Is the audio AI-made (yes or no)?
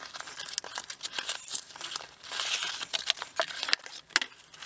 no